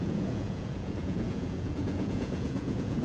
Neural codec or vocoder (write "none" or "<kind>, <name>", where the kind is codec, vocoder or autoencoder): vocoder, Vocos